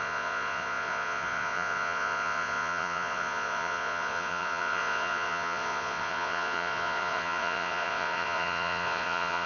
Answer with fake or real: fake